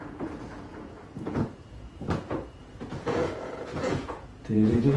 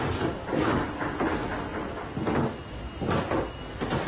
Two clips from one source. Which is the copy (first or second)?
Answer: first